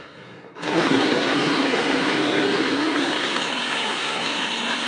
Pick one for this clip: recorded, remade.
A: remade